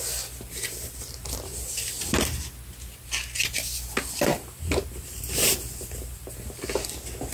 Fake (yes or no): no